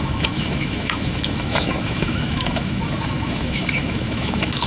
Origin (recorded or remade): remade